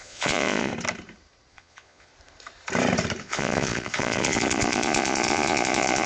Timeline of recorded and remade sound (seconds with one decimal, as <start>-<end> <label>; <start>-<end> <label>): 0.0-0.7 remade; 0.7-1.5 recorded; 1.5-2.1 remade; 2.1-3.2 recorded; 3.2-6.1 remade